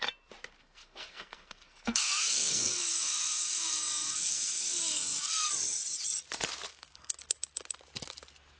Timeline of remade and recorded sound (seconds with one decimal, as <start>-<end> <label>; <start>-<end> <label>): 0.0-0.6 recorded; 0.6-5.5 remade; 5.5-6.7 recorded; 6.7-7.2 remade; 7.2-8.6 recorded